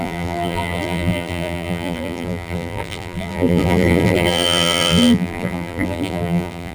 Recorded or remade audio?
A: remade